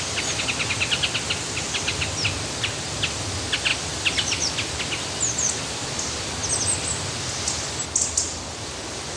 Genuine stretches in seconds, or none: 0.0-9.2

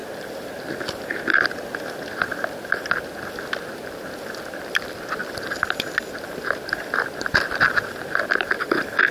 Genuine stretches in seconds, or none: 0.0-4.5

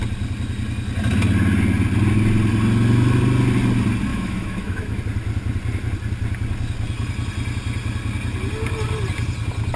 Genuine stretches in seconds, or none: 0.0-4.1; 5.0-9.8

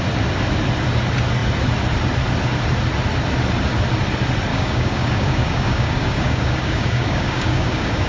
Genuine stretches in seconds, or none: 0.0-4.5

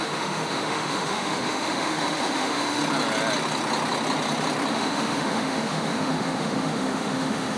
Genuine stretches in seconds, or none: 2.8-4.7

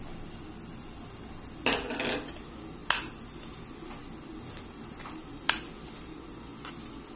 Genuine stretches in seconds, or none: 0.0-7.2

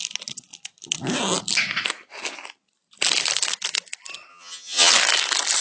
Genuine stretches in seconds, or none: 0.0-4.3; 4.9-5.6